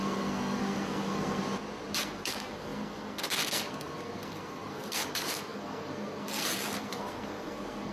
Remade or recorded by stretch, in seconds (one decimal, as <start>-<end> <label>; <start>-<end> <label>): 0.0-1.4 remade; 1.4-2.0 recorded; 2.0-7.9 remade